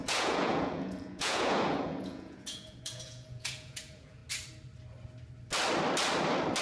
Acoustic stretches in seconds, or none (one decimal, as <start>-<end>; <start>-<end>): 4.2-6.6